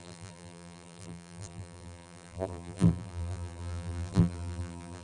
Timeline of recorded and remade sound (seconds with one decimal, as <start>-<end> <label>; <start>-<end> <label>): 0.0-5.0 remade